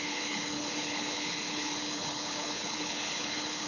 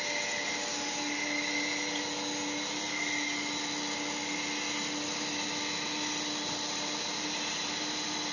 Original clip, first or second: second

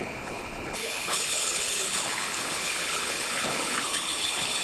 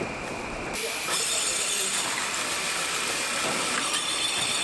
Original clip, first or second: second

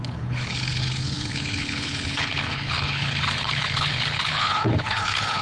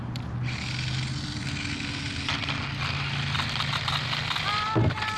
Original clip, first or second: second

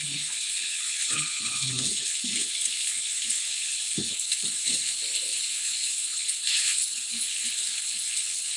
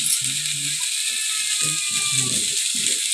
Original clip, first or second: second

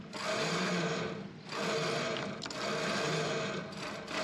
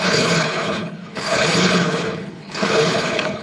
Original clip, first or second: first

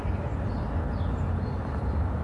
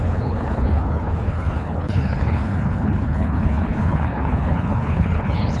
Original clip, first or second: first